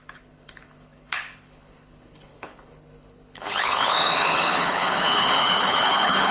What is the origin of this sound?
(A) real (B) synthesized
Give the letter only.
B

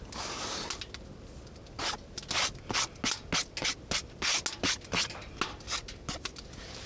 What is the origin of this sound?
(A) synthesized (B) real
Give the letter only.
B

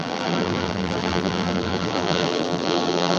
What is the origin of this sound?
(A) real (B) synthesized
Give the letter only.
B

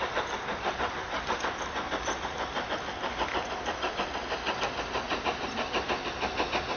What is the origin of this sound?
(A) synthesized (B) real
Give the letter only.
B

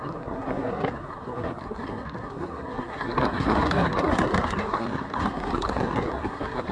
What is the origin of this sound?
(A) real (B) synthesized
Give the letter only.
B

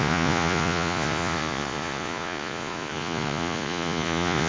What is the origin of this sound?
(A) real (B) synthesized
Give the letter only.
B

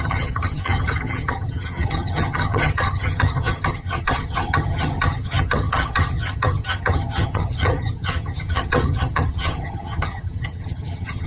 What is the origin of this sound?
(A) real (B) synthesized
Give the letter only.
B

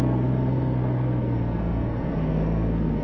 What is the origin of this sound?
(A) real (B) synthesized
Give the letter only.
B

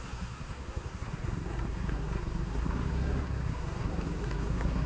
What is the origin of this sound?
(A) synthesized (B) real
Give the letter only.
A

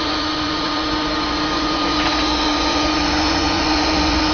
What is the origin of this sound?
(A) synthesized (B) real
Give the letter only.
A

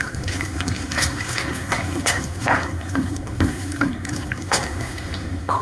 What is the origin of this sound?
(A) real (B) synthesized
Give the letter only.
B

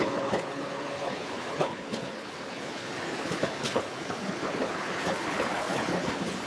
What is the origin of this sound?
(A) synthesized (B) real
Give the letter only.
A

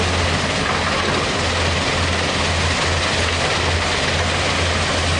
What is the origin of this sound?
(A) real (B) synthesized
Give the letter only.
A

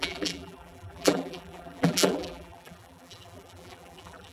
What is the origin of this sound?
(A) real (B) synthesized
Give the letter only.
B